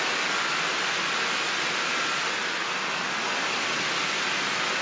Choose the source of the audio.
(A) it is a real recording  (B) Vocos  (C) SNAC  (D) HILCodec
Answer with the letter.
A